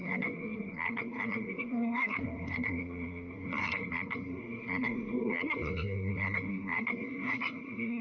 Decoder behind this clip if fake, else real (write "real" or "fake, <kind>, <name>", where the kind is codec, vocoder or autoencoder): fake, codec, SNAC